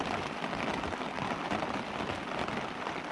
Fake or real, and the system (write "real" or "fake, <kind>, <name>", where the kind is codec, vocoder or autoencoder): real